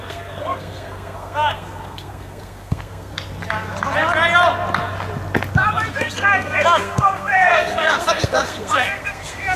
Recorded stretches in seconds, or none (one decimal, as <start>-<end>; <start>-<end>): 3.1-5.9